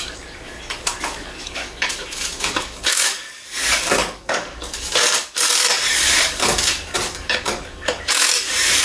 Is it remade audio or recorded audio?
remade